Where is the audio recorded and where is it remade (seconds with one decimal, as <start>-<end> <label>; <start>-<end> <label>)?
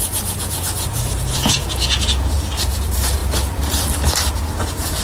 0.0-3.2 remade; 3.2-4.3 recorded; 4.3-5.0 remade